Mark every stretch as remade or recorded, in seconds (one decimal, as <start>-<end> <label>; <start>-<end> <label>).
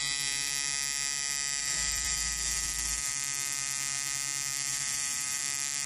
0.0-1.6 recorded; 1.6-3.1 remade; 3.1-4.7 recorded; 4.7-5.4 remade; 5.4-5.9 recorded